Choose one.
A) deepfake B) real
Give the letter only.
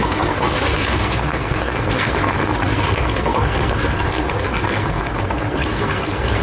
A